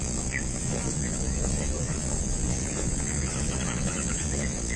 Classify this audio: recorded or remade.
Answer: remade